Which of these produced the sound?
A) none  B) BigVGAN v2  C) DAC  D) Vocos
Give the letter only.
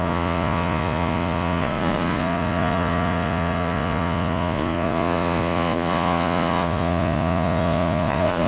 D